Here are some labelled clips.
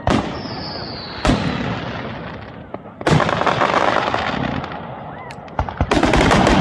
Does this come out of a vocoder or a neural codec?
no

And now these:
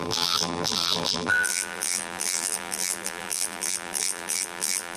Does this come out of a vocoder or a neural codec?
yes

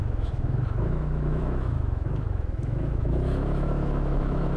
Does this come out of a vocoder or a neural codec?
yes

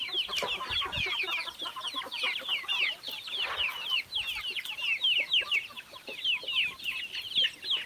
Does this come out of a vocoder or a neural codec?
no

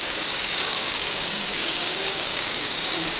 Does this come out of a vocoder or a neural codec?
yes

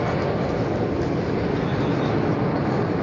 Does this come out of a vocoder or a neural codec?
no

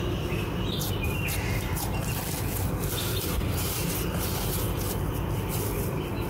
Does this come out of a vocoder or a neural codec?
no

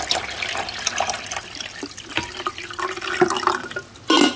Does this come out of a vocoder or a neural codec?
no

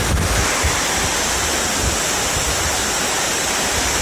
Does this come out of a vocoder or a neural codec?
no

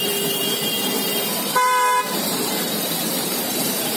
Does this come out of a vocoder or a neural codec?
yes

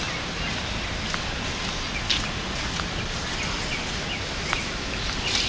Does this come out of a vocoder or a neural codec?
no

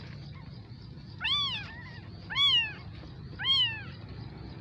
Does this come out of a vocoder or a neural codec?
no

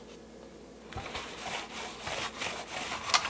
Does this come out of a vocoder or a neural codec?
no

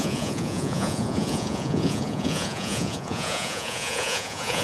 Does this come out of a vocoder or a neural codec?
yes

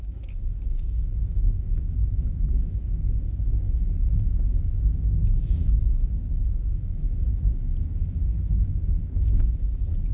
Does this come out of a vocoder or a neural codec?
yes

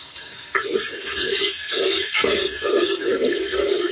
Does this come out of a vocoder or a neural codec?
yes